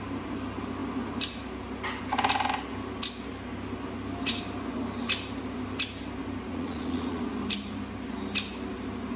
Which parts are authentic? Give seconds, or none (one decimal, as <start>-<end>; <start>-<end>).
0.0-6.5; 7.2-9.2